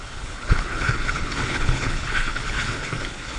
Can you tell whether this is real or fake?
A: fake